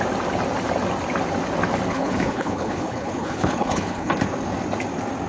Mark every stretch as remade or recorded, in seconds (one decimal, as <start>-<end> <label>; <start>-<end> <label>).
0.0-1.9 recorded; 1.9-4.1 remade; 4.1-5.3 recorded